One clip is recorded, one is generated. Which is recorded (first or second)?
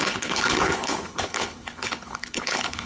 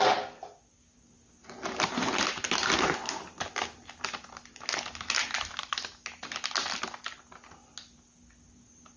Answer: second